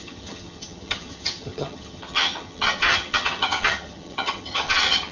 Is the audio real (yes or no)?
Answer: no